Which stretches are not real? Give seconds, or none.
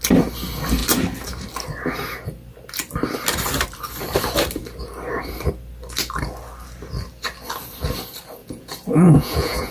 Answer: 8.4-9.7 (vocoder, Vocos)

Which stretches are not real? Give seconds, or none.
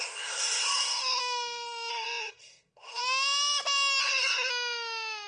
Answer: 0.0-1.2 (codec, SNAC); 1.9-3.0; 4.0-4.5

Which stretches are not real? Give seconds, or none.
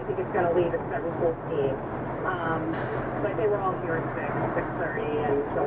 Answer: none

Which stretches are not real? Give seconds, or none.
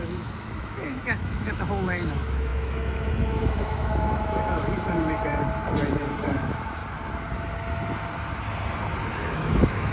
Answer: 0.0-5.4 (autoencoder, DAC-VAE); 6.1-6.8; 9.1-9.9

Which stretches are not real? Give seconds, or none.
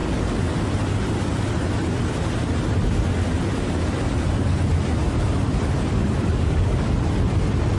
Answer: 5.9-6.9 (codec, DAC)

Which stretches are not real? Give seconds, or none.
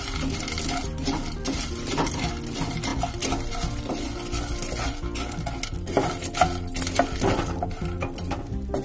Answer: none